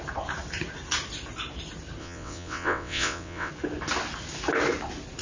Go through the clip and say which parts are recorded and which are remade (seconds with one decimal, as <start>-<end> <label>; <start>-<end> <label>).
0.0-2.0 recorded; 2.0-3.5 remade; 3.5-5.2 recorded